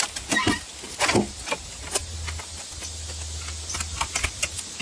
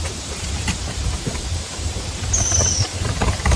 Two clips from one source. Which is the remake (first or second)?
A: second